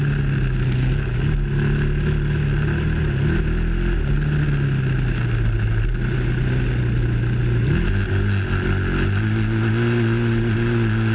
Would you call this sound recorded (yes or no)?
yes